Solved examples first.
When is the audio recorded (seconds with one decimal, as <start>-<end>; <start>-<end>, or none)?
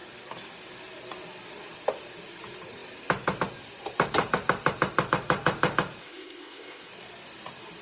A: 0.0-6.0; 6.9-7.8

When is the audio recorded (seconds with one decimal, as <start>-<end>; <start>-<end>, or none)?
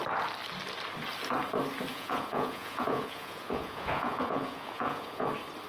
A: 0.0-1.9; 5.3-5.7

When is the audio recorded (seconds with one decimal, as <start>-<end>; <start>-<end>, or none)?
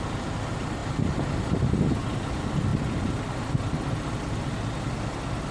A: 0.0-5.5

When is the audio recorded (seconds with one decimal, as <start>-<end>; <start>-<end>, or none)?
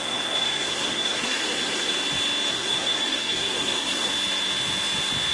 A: 1.9-2.5; 4.1-5.3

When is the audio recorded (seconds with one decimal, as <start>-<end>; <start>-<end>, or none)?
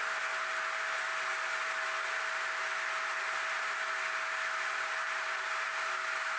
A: 0.0-6.4